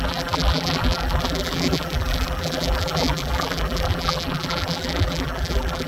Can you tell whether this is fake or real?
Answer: fake